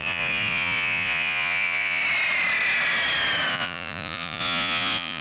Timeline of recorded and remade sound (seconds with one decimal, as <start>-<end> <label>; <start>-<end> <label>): 0.0-2.0 remade; 2.0-3.5 recorded; 3.5-5.2 remade